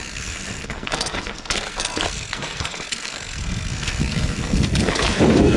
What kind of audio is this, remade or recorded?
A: remade